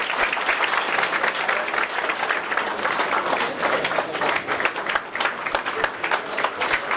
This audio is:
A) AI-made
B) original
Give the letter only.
B